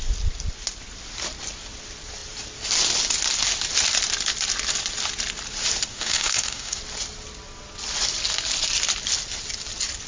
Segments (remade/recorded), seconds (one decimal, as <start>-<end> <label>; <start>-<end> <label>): 0.0-5.9 recorded; 5.9-6.8 remade; 6.8-10.1 recorded

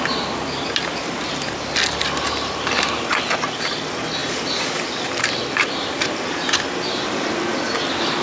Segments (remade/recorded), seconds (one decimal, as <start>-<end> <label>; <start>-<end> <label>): 0.0-8.2 recorded

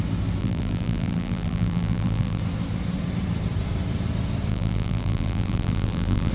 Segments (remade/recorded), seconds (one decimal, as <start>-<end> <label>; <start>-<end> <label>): 0.0-0.4 recorded; 0.4-2.4 remade; 2.4-4.5 recorded; 4.5-6.3 remade

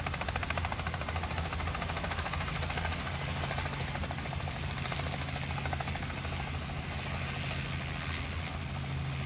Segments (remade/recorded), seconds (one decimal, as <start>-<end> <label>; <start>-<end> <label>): 0.0-4.0 recorded; 4.0-4.9 remade; 4.9-9.3 recorded

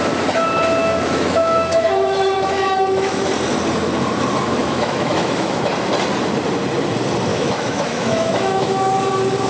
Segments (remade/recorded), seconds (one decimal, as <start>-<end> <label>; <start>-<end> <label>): 0.0-0.8 recorded; 0.8-3.3 remade; 3.3-4.6 recorded; 4.6-5.7 remade; 5.7-7.3 recorded; 7.3-8.9 remade; 8.9-9.5 recorded

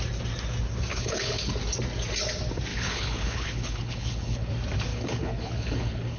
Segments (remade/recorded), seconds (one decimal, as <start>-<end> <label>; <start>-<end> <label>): 0.0-0.9 recorded; 0.9-1.5 remade; 1.5-2.7 recorded; 2.7-4.5 remade; 4.5-4.9 recorded; 4.9-6.2 remade

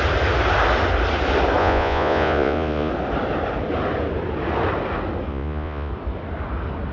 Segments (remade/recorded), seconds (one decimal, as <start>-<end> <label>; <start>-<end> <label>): 0.0-1.6 recorded; 1.6-2.9 remade; 2.9-5.3 recorded; 5.3-5.9 remade; 5.9-6.9 recorded